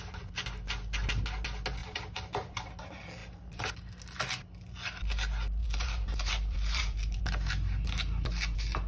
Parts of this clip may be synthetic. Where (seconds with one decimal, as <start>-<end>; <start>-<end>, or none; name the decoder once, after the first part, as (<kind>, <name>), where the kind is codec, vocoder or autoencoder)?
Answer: 1.8-2.7 (vocoder, BigVGAN v2); 3.2-3.7; 5.6-7.2